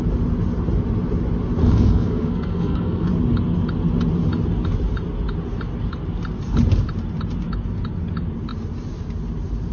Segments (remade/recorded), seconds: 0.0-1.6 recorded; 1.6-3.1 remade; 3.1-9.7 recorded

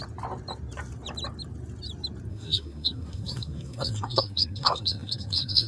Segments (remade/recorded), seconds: 0.0-2.3 recorded; 2.3-5.7 remade

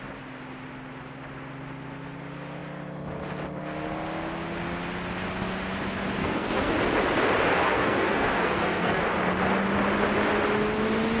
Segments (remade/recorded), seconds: 0.0-6.2 recorded; 6.2-6.7 remade; 6.7-7.5 recorded; 7.5-9.0 remade; 9.0-11.2 recorded

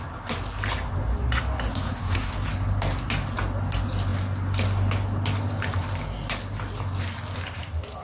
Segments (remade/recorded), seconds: 0.0-1.7 recorded; 1.7-2.3 remade; 2.3-8.0 recorded

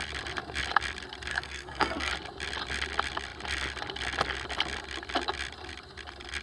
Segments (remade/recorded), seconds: 0.0-1.3 recorded; 1.3-2.1 remade; 2.1-6.4 recorded

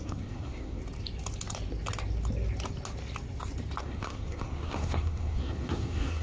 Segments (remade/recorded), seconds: 0.0-0.8 remade; 0.8-3.8 recorded; 3.8-6.2 remade